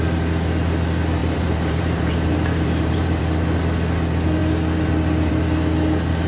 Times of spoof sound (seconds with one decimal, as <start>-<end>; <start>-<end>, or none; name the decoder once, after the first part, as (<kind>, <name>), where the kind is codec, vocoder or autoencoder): 1.2-3.2 (vocoder, BigVGAN v2)